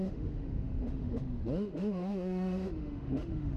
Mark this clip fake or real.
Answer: fake